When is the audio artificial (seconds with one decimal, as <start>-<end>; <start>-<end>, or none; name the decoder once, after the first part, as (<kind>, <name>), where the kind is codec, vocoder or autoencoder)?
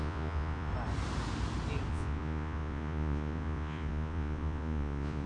0.0-0.7 (vocoder, Vocos); 1.9-5.3